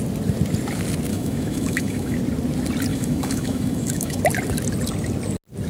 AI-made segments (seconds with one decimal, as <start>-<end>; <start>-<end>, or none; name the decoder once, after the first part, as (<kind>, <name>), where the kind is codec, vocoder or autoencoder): 1.1-2.2 (autoencoder, DAC-VAE); 2.9-4.2

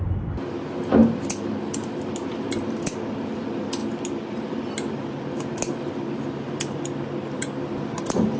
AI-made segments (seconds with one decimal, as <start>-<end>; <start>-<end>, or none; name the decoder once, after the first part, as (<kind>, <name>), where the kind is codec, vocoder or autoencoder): none

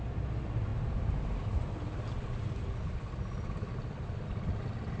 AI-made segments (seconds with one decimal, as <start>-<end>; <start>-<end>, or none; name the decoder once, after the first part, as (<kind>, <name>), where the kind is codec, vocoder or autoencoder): none

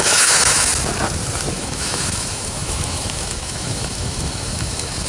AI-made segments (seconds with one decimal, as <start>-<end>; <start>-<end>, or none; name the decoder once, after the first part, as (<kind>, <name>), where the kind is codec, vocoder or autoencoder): 0.0-0.7 (autoencoder, DAC-VAE); 1.5-5.1

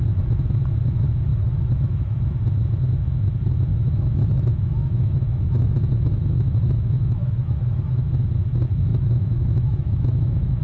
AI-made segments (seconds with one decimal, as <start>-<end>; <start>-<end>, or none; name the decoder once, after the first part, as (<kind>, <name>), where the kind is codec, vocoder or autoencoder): 1.3-2.2 (autoencoder, DAC-VAE); 3.7-8.1; 8.9-10.6

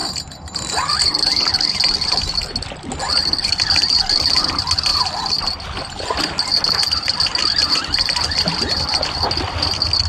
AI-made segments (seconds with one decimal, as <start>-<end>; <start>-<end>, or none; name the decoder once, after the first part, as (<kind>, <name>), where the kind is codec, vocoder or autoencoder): none

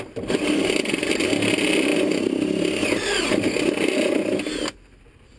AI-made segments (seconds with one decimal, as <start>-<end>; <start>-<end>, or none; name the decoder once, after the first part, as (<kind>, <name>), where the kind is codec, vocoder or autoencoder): none

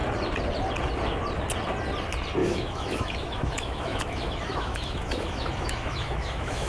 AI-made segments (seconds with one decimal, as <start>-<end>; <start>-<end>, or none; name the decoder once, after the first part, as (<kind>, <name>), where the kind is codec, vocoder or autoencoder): 2.4-6.7 (autoencoder, DAC-VAE)